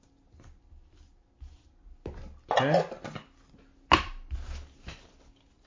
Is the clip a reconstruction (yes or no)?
no